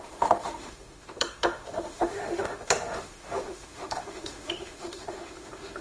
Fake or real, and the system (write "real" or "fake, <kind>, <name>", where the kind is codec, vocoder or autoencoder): fake, autoencoder, DAC-VAE